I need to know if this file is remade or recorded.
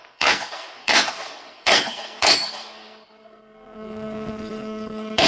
remade